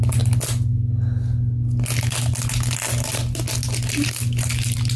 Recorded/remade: recorded